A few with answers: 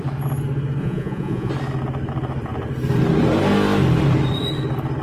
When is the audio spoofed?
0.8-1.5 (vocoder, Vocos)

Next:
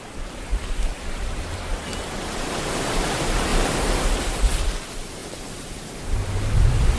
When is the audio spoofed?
0.5-1.7 (vocoder, BigVGAN v2); 5.2-5.8

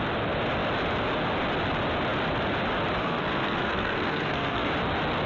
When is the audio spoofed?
3.0-4.7 (codec, SNAC)

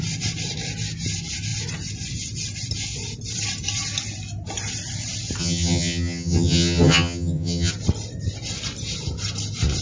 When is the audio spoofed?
5.4-7.7 (vocoder, HiFi-GAN)

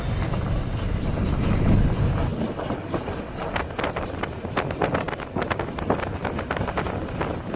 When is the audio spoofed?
none

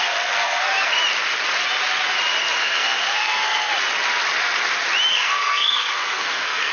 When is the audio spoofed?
0.0-1.0 (codec, SNAC); 2.6-3.7; 5.1-6.7